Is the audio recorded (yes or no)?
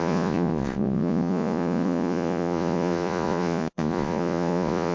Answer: no